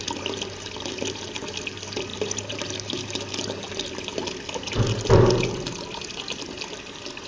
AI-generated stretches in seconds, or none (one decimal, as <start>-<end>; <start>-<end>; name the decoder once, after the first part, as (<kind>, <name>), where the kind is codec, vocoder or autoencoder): 2.1-3.3 (vocoder, BigVGAN v2); 4.1-4.7